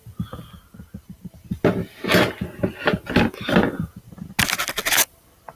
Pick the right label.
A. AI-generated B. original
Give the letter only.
B